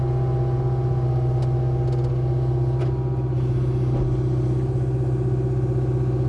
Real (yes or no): yes